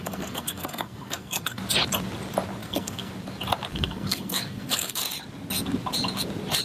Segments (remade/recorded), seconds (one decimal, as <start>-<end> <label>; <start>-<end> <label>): 0.0-1.6 remade; 1.6-2.6 recorded; 2.6-3.1 remade; 3.1-3.7 recorded; 3.7-5.0 remade; 5.0-6.6 recorded